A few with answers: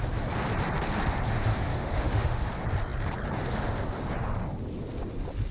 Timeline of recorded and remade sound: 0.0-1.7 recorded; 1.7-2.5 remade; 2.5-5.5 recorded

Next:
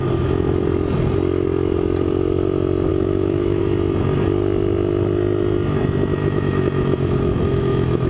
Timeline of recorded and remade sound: 0.0-2.9 recorded; 2.9-3.6 remade; 3.6-6.2 recorded; 6.2-8.1 remade

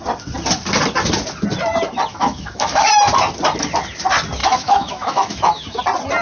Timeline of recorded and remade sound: 0.0-2.1 recorded; 2.1-2.9 remade; 2.9-4.4 recorded; 4.4-5.8 remade; 5.8-6.2 recorded

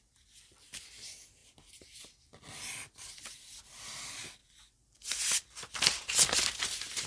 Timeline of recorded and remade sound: 0.0-7.1 recorded

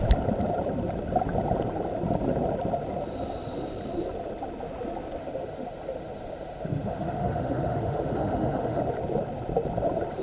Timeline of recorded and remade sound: 0.0-5.2 recorded; 5.2-8.8 remade; 8.8-10.2 recorded

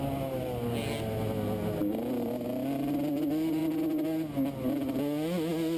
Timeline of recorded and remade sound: 0.0-5.8 recorded